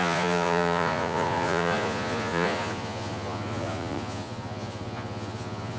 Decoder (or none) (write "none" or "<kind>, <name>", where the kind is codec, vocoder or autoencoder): vocoder, Vocos